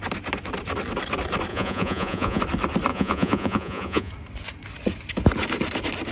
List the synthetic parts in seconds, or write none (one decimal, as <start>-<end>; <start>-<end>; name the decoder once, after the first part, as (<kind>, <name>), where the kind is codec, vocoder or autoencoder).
1.5-2.4 (vocoder, Vocos); 2.9-4.1